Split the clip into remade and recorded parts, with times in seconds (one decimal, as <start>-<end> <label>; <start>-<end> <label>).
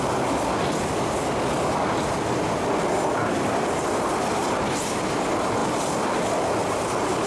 0.0-7.3 recorded